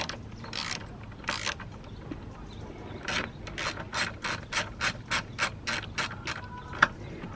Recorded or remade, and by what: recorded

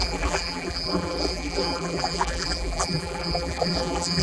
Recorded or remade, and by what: remade, vocoder, BigVGAN v2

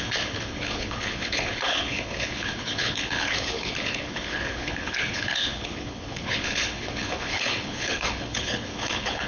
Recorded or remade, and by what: remade, codec, HILCodec